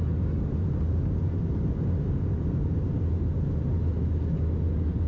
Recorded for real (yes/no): yes